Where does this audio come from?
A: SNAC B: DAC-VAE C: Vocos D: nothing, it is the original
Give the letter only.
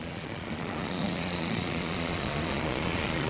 C